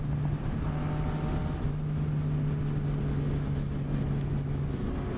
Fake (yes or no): no